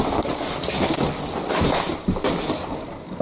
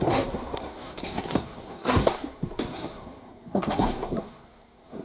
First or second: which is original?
first